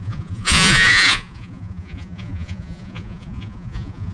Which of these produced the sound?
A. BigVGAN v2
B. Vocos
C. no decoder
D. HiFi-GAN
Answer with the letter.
B